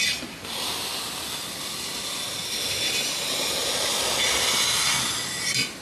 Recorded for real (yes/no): yes